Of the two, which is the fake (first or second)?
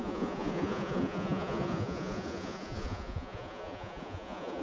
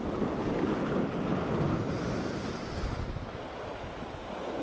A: first